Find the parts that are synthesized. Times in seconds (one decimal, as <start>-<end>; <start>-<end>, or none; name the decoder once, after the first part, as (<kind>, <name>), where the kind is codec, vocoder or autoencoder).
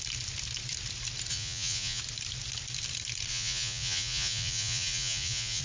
1.3-2.0 (vocoder, Vocos); 3.3-5.6